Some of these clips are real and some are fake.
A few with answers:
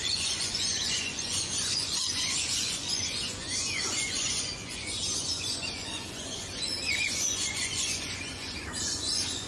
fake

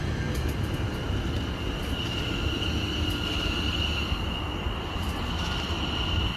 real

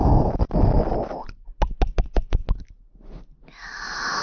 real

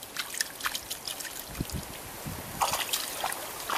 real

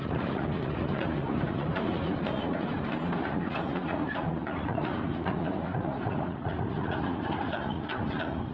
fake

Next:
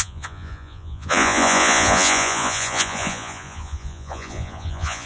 fake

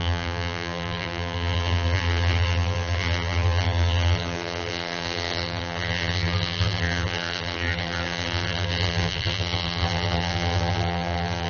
fake